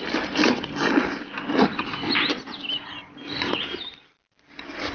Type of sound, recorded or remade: recorded